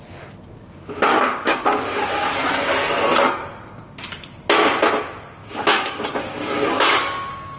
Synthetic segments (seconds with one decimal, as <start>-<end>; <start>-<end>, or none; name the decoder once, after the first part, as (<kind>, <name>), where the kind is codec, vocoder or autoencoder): 1.1-2.3 (codec, DAC); 5.4-7.6